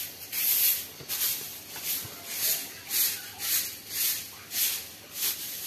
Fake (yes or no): no